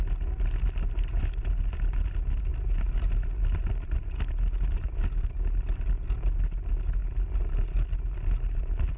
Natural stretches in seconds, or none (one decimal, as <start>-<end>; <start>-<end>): 0.0-9.0